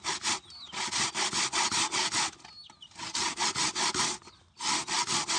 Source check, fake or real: real